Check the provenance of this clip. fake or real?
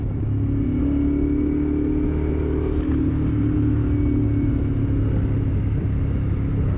real